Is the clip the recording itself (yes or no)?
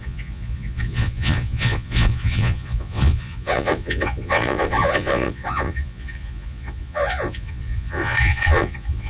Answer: no